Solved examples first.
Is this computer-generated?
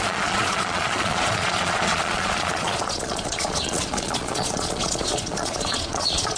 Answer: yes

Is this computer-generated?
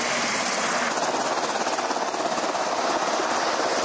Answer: no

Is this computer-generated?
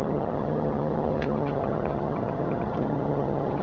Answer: yes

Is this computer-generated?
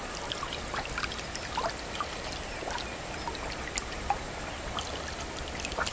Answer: no